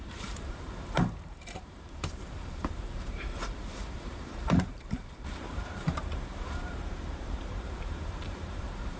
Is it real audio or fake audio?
fake